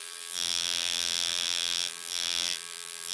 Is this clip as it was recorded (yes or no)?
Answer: no